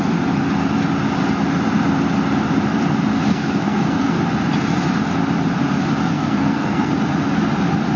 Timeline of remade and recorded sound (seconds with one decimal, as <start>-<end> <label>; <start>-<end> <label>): 0.0-3.3 recorded; 3.3-4.2 remade; 4.2-6.0 recorded; 6.0-6.9 remade; 6.9-8.0 recorded